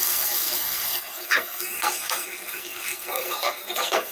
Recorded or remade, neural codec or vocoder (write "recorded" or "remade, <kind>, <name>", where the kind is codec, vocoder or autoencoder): remade, codec, SNAC